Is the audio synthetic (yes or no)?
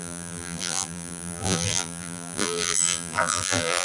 yes